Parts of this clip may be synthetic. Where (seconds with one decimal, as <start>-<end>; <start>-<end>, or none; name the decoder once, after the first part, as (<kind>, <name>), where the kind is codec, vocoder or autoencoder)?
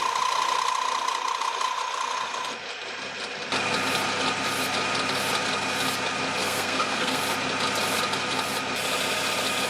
6.4-7.2 (codec, SNAC)